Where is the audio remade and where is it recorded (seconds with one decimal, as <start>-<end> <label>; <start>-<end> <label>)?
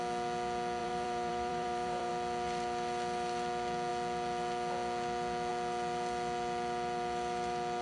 0.0-0.8 recorded; 0.8-2.1 remade; 2.1-7.8 recorded